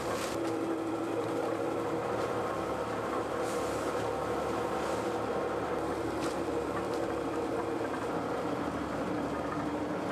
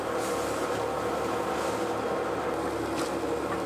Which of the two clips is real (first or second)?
second